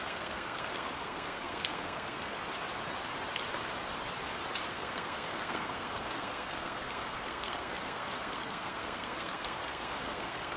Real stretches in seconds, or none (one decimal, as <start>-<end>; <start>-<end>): 2.4-4.7